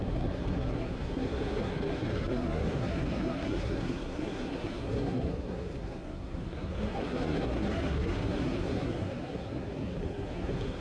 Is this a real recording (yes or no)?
no